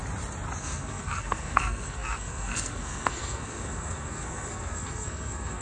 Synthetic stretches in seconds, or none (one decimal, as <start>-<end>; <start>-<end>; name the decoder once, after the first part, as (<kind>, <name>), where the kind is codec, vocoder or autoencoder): 0.6-5.6 (codec, SNAC)